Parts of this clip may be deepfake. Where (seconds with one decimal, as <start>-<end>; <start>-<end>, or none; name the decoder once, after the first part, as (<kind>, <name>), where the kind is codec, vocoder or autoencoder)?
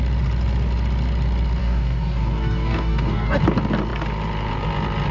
1.6-3.4 (codec, DAC)